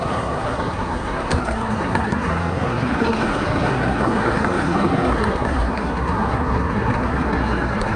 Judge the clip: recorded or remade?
remade